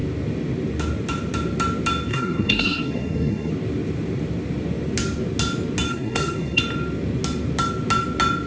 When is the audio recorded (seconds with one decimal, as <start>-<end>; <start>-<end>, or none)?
0.0-2.1; 3.5-5.9; 6.6-8.5